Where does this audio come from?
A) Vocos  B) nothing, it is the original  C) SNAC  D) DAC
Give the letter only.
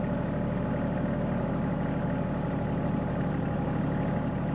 B